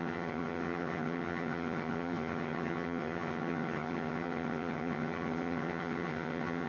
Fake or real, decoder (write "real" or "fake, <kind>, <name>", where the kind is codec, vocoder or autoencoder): fake, vocoder, HiFi-GAN